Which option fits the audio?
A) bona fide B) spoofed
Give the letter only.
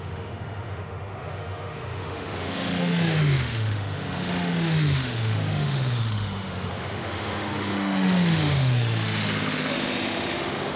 B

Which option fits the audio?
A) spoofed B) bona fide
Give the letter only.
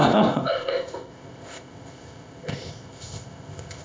A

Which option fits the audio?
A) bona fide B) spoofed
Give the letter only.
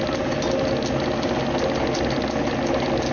A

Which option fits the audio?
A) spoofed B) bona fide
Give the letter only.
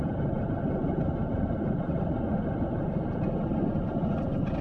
B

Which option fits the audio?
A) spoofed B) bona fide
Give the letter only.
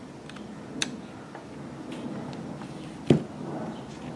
B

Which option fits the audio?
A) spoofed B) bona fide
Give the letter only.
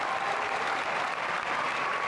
B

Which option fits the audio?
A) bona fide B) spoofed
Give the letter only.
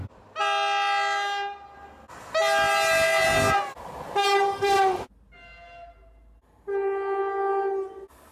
A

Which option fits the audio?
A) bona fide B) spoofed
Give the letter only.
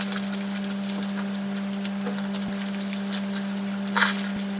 A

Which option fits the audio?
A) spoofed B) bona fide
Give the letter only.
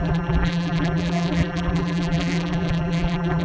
A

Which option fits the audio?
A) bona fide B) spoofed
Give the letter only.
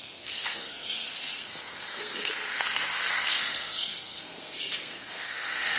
B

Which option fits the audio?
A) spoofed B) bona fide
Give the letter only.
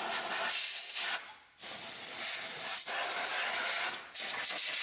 B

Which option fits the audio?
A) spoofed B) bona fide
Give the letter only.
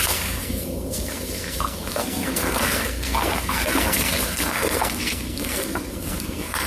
A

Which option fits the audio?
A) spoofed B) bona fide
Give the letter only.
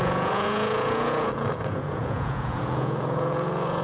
A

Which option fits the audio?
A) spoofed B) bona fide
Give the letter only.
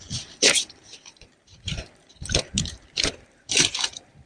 A